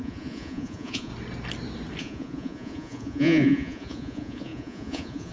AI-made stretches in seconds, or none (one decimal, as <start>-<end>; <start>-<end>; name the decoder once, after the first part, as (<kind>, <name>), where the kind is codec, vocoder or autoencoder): 0.0-1.1 (vocoder, Vocos); 2.0-5.3